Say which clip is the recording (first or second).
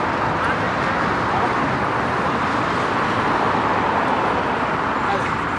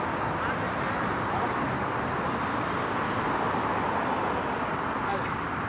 second